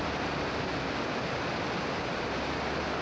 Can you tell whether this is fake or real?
real